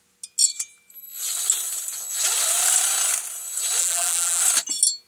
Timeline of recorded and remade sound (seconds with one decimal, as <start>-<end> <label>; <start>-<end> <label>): 0.0-3.8 recorded; 3.8-4.4 remade; 4.4-5.1 recorded